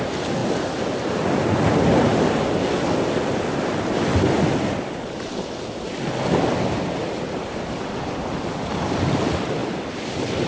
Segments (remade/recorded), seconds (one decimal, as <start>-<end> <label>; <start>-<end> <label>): 0.0-10.5 recorded